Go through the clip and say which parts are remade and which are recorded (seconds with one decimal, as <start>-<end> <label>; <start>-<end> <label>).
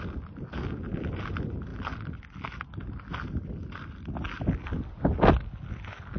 0.0-6.2 recorded